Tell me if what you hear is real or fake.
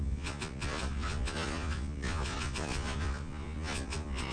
fake